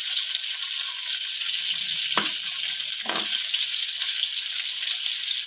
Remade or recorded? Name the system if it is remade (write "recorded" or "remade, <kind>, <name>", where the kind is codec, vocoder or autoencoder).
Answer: recorded